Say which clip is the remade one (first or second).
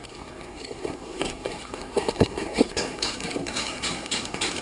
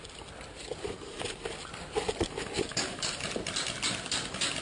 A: first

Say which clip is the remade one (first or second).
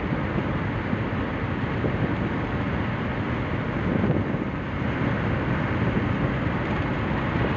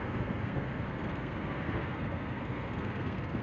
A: second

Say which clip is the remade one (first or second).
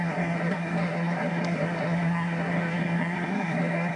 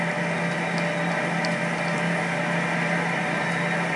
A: first